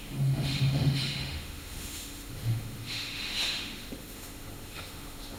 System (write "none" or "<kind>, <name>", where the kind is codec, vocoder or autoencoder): autoencoder, DAC-VAE